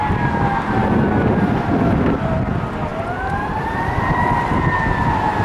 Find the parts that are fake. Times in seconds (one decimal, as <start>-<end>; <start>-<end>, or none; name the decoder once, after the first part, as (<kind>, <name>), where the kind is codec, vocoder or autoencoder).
0.0-0.8 (vocoder, BigVGAN v2); 1.3-5.4

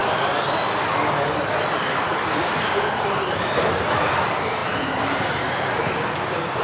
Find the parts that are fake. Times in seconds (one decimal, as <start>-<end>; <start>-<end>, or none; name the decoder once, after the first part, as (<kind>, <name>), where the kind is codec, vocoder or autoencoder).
1.4-4.6 (vocoder, BigVGAN v2); 5.4-6.6

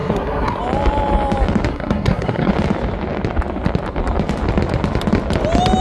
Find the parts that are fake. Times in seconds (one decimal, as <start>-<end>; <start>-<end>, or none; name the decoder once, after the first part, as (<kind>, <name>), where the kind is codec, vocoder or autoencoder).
0.0-0.6 (codec, SNAC); 1.7-2.5

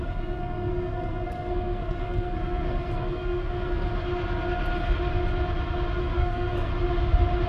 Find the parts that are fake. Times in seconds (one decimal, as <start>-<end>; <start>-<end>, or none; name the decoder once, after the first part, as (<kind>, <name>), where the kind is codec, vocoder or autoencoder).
0.0-3.9 (codec, SNAC); 6.0-6.7

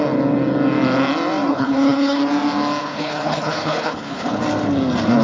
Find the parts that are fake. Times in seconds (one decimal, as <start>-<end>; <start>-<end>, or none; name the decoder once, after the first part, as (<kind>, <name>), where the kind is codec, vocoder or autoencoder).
1.5-2.2 (codec, HILCodec); 2.8-4.4

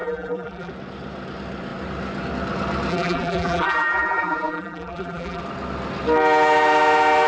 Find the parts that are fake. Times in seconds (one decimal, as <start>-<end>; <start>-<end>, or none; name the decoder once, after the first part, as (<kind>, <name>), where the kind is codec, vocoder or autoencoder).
0.0-0.7 (vocoder, BigVGAN v2); 2.9-5.4

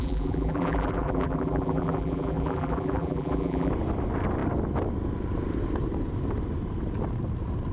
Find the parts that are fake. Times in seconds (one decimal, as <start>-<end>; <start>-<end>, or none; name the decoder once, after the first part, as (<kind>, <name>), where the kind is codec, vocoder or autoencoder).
0.0-3.7 (vocoder, BigVGAN v2)

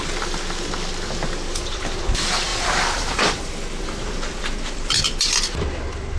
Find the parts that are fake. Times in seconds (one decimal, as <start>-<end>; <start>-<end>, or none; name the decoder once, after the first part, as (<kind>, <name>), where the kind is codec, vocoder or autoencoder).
2.5-5.0 (vocoder, BigVGAN v2)